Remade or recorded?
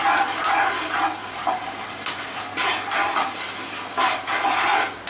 recorded